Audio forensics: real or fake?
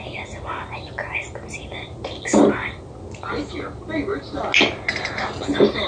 real